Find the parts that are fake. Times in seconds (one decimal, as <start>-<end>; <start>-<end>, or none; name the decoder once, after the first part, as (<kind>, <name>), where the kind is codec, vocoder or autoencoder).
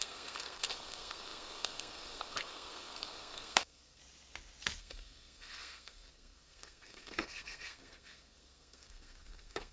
0.0-4.0 (codec, SNAC); 4.8-9.7